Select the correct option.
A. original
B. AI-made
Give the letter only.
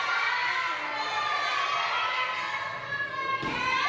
A